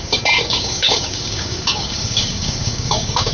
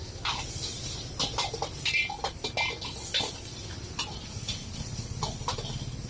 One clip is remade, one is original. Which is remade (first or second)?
first